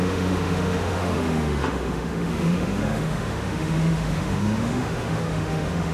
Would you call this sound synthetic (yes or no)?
yes